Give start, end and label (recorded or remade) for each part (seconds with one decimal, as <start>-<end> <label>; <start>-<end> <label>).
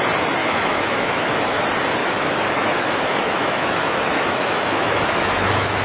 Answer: 0.0-0.4 recorded; 0.4-1.6 remade; 1.6-2.0 recorded; 2.0-5.8 remade